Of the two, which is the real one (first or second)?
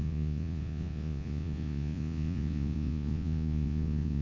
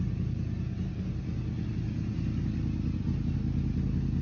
second